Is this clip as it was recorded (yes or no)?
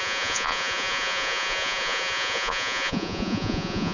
no